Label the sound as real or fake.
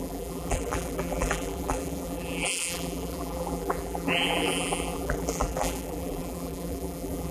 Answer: fake